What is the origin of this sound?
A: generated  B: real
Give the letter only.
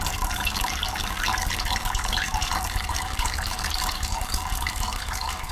A